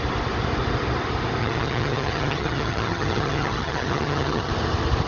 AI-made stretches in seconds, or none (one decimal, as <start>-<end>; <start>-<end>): 1.4-4.5